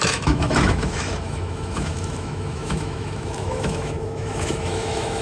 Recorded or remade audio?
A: remade